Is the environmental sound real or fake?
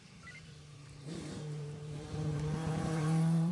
fake